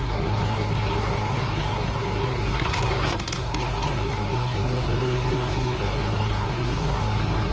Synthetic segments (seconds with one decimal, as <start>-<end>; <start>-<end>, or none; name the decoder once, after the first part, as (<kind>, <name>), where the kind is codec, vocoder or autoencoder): 0.0-7.5 (codec, SNAC)